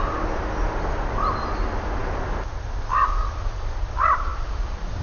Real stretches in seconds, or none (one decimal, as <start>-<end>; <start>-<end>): 0.0-5.0